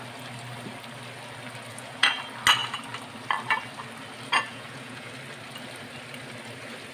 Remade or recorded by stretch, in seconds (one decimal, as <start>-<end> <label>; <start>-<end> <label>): 0.0-1.7 recorded; 1.7-2.2 remade; 2.2-4.5 recorded; 4.5-5.1 remade; 5.1-6.9 recorded

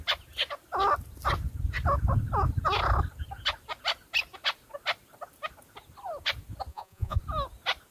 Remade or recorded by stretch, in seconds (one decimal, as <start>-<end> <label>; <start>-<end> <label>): 0.0-6.7 recorded; 6.7-7.2 remade; 7.2-7.9 recorded

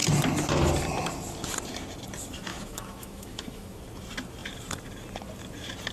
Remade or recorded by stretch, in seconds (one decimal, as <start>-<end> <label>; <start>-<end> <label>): 0.0-2.5 recorded; 2.5-3.8 remade; 3.8-5.9 recorded

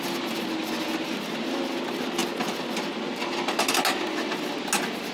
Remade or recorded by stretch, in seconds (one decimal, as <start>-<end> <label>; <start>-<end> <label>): 0.0-5.1 recorded

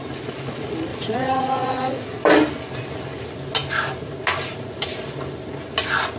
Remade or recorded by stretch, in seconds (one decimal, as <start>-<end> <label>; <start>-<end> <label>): 0.0-0.9 recorded; 0.9-2.2 remade; 2.2-6.2 recorded

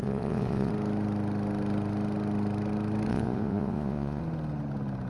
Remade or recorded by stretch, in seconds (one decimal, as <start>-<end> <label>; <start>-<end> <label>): 0.0-0.7 remade; 0.7-3.1 recorded; 3.1-4.2 remade; 4.2-5.1 recorded